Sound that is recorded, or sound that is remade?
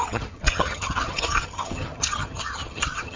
remade